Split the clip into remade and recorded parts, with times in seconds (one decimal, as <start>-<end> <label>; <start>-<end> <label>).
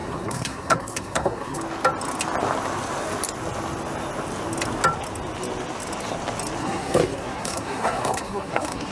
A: 0.0-1.6 remade; 1.6-6.6 recorded; 6.6-8.9 remade